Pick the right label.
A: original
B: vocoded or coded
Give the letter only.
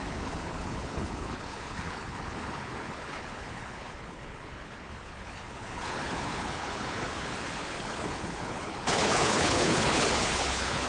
B